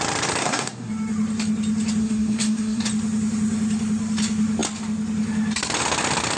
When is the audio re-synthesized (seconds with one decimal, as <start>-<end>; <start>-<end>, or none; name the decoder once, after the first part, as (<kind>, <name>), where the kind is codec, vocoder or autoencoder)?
0.4-0.9 (codec, SNAC); 2.0-2.8